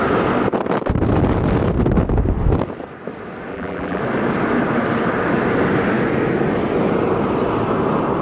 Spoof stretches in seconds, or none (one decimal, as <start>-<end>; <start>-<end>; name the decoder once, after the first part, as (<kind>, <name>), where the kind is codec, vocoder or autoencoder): 3.5-4.0 (vocoder, BigVGAN v2)